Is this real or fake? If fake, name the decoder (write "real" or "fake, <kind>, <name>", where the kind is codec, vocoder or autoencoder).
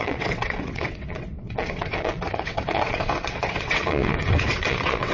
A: fake, vocoder, WaveNeXt